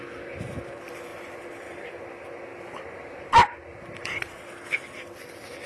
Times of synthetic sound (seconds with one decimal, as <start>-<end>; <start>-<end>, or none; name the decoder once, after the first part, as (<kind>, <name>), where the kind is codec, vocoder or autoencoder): 1.1-1.8 (vocoder, BigVGAN v2); 2.5-4.5